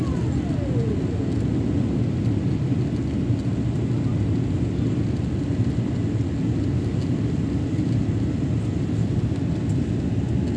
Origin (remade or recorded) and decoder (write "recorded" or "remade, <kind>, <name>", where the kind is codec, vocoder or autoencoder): recorded